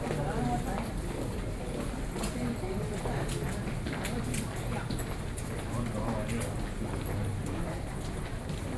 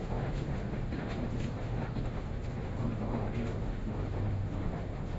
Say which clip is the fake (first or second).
second